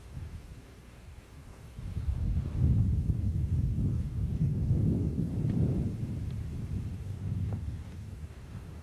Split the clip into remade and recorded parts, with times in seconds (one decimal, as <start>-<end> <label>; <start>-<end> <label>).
0.0-5.3 remade; 5.3-6.9 recorded; 6.9-8.8 remade